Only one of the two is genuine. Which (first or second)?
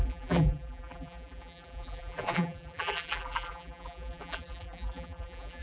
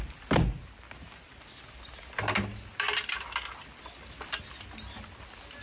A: second